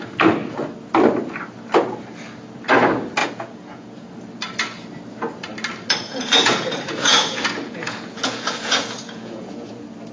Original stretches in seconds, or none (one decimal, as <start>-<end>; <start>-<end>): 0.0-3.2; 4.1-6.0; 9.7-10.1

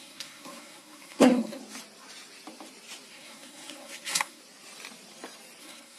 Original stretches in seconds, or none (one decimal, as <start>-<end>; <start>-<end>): 1.6-3.1; 4.4-5.6

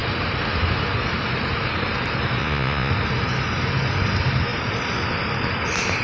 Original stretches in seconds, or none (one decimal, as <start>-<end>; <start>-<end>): 0.0-2.4; 2.9-6.0

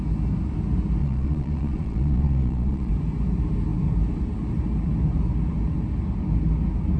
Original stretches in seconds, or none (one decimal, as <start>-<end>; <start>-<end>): 0.0-1.0; 2.9-7.0

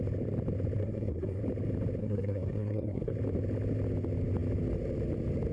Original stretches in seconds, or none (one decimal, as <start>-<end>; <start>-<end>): 0.0-0.8; 1.4-2.0; 3.1-5.5

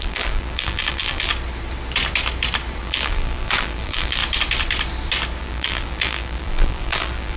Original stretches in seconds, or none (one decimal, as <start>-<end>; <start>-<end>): 1.3-2.8; 4.2-5.4